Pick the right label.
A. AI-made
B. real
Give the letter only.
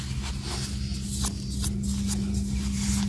B